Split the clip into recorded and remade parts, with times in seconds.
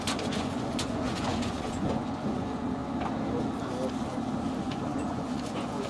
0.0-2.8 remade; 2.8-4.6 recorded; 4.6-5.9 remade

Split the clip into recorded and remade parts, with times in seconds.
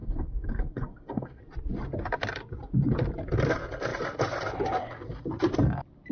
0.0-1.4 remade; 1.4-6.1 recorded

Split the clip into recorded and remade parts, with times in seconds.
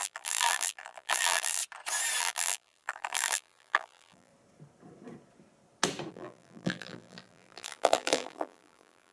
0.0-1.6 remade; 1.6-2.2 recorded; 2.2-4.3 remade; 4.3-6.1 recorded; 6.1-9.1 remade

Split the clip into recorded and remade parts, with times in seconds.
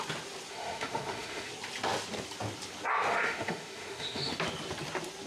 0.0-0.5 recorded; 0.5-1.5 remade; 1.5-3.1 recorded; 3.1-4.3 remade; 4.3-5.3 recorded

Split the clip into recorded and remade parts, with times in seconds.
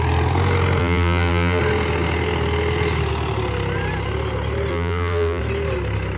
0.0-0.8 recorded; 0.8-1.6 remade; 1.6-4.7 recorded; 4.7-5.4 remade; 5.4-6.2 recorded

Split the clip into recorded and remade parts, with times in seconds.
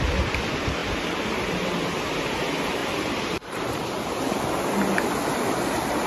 0.0-2.8 recorded; 2.8-4.5 remade; 4.5-6.1 recorded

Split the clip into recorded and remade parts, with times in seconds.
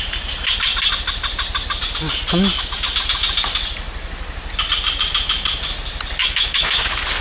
0.0-6.2 recorded; 6.2-6.7 remade; 6.7-7.2 recorded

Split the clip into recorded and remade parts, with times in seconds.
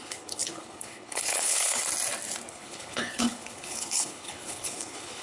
0.0-1.8 remade; 1.8-2.5 recorded; 2.5-5.2 remade